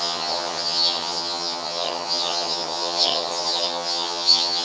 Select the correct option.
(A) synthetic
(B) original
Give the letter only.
A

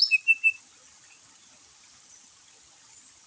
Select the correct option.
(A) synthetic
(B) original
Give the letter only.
B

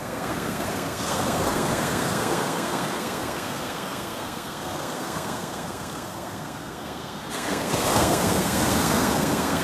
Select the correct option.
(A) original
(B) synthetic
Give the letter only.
B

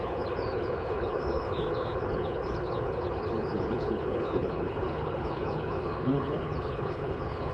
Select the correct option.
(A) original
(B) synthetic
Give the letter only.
B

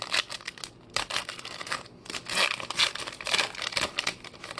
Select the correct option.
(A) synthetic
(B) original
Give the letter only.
B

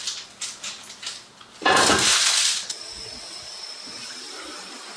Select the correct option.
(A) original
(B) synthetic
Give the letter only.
A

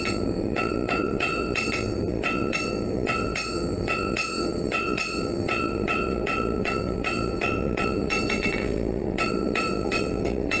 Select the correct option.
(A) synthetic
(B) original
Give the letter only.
A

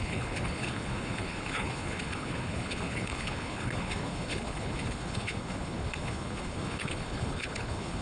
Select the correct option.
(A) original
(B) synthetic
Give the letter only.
B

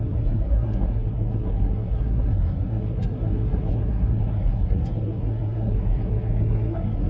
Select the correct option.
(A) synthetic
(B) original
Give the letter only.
A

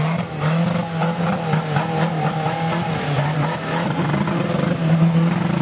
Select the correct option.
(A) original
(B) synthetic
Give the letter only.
A